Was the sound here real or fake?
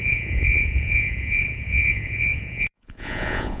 fake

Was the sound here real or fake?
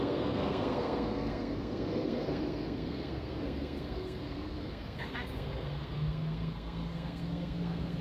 fake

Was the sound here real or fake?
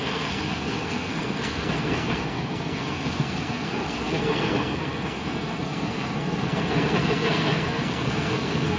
fake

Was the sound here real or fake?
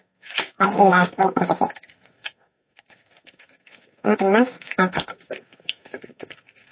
fake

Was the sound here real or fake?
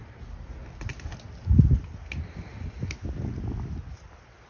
real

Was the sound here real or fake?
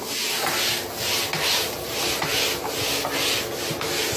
real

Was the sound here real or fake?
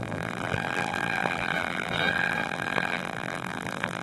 fake